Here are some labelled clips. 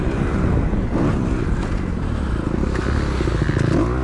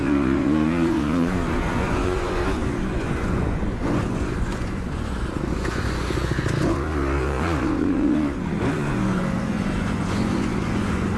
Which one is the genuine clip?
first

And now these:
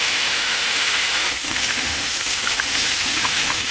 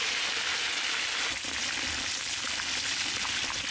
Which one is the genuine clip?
second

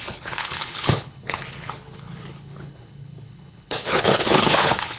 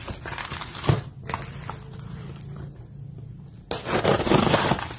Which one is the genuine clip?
second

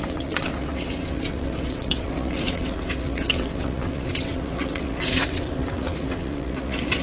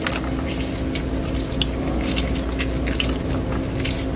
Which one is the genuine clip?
second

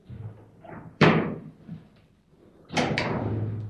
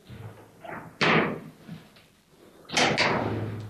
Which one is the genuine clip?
second